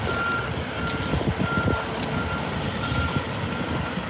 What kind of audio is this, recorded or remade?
recorded